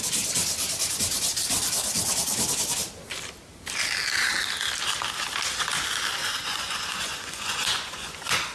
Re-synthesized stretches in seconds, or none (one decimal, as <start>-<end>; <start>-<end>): 6.2-8.5